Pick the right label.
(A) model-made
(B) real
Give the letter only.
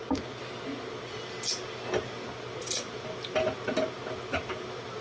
B